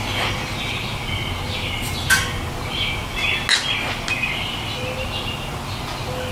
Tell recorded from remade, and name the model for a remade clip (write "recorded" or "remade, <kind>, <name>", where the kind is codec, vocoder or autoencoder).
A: recorded